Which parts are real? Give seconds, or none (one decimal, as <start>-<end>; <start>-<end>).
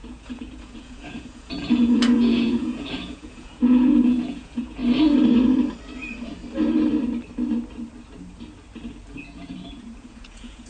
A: 4.8-9.2